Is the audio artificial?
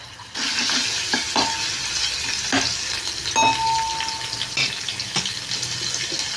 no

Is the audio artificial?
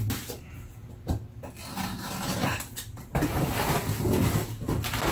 no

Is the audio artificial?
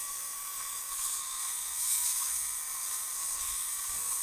yes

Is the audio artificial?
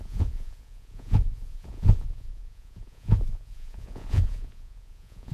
yes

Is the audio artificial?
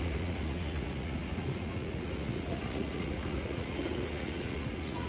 yes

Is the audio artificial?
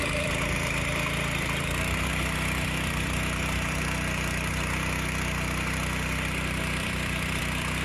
yes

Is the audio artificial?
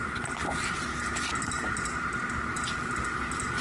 no